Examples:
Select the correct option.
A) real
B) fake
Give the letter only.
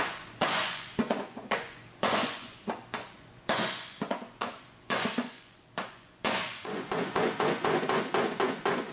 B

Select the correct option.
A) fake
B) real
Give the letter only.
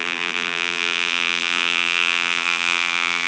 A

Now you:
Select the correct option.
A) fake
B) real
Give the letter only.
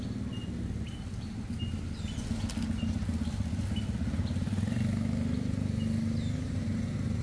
B